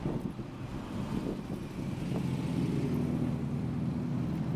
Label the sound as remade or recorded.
recorded